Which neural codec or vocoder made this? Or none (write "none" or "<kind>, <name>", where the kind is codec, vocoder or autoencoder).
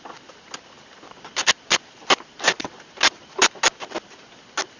none